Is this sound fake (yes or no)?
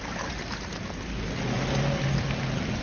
no